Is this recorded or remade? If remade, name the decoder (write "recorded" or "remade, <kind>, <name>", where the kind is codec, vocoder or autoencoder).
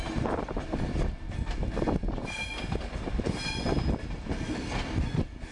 recorded